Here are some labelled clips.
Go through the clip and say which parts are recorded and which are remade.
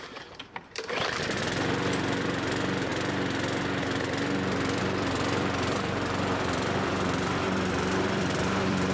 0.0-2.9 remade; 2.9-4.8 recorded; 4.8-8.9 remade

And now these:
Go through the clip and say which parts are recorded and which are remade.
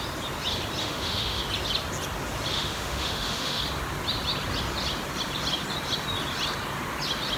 0.0-0.8 recorded; 0.8-1.4 remade; 1.4-2.5 recorded; 2.5-3.6 remade; 3.6-7.4 recorded